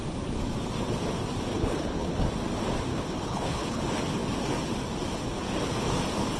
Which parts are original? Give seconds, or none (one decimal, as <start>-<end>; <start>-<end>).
0.0-1.5; 2.3-2.9; 3.8-6.4